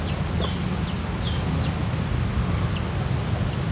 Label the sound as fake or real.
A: real